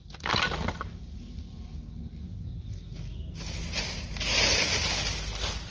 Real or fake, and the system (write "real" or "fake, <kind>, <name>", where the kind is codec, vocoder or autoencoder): real